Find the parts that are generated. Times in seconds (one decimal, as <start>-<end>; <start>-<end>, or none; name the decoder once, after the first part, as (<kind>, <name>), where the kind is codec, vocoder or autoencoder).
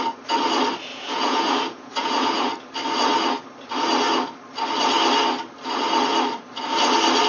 0.9-2.5 (vocoder, Vocos)